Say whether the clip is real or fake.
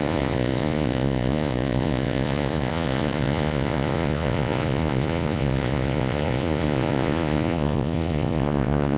fake